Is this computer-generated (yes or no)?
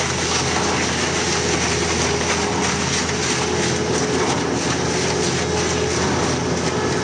no